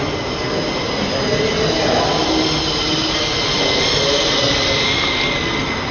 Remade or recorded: recorded